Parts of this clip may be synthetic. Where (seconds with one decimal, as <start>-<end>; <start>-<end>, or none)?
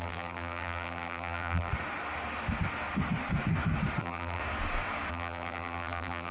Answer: 0.0-1.7; 4.0-4.4; 5.1-6.3